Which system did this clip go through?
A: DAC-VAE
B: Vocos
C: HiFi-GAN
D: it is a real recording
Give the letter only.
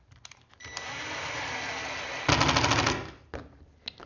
D